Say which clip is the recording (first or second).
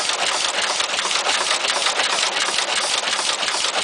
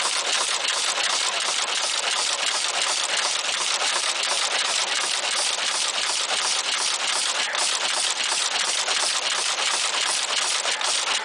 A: first